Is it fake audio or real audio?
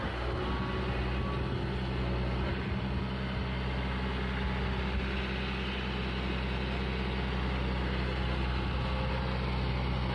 real